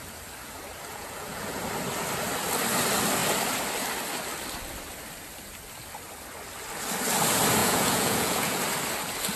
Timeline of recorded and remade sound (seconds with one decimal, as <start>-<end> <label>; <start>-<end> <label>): 0.0-0.9 recorded; 0.9-1.6 remade; 1.6-7.6 recorded; 7.6-8.6 remade; 8.6-9.4 recorded